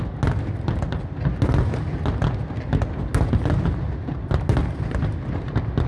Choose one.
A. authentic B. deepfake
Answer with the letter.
A